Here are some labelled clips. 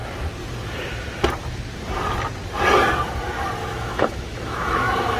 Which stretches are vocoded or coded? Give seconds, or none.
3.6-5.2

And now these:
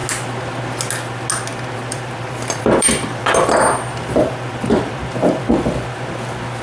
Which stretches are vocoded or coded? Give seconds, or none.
1.5-5.5